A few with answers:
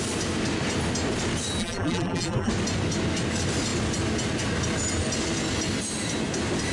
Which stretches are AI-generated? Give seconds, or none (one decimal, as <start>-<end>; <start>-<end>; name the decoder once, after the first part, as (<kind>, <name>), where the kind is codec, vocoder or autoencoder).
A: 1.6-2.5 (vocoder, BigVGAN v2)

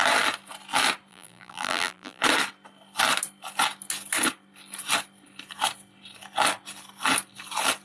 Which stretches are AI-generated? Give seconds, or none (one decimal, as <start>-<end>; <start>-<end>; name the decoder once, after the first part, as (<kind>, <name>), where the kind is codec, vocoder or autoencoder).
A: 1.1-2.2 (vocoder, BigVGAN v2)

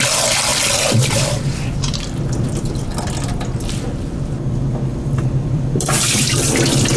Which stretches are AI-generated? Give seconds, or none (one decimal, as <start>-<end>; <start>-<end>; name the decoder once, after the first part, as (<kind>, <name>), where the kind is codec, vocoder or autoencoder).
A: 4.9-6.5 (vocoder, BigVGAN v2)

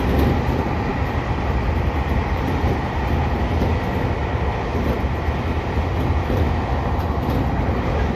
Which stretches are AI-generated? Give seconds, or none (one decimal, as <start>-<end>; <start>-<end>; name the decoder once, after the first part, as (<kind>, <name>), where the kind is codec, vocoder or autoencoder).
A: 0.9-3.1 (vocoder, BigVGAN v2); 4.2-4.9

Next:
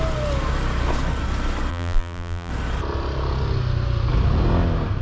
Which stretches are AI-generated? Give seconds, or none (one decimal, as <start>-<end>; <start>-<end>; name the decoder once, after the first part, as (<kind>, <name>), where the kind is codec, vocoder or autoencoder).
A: 1.7-2.5 (vocoder, BigVGAN v2)

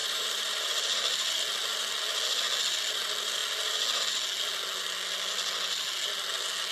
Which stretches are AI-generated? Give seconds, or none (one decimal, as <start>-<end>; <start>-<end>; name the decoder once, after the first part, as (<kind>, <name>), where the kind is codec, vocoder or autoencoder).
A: 0.0-0.7 (vocoder, BigVGAN v2)

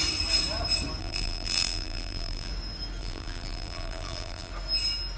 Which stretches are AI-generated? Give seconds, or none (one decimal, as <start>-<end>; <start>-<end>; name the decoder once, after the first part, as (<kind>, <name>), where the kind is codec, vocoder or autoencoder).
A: 1.0-2.5 (vocoder, BigVGAN v2); 3.0-4.5

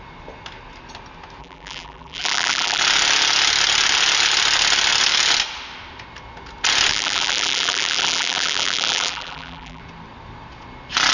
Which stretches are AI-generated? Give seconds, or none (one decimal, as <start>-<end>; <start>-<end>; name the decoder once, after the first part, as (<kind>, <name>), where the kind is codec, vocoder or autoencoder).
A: 1.4-2.8 (vocoder, BigVGAN v2); 6.9-9.8